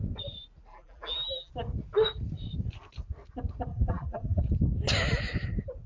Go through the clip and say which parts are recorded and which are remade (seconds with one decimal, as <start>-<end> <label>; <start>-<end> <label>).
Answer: 0.0-0.7 recorded; 0.7-1.5 remade; 1.5-3.7 recorded; 3.7-4.4 remade; 4.4-5.9 recorded